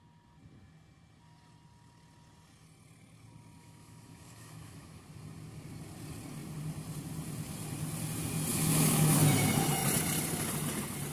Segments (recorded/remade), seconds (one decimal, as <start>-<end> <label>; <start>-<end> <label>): 0.0-3.6 recorded; 3.6-5.0 remade; 5.0-8.5 recorded; 8.5-9.2 remade; 9.2-11.1 recorded